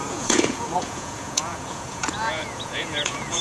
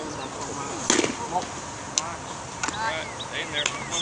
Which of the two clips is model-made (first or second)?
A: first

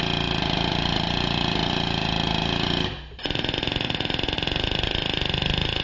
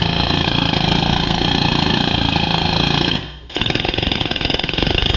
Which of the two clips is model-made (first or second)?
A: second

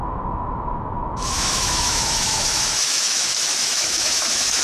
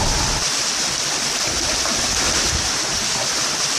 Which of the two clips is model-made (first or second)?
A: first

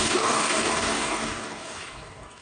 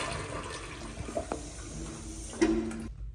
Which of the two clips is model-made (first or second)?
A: first